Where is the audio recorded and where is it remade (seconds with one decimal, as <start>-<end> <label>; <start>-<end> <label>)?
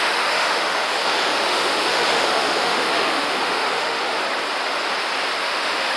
0.0-4.2 remade; 4.2-5.4 recorded; 5.4-6.0 remade